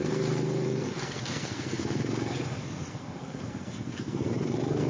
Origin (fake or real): fake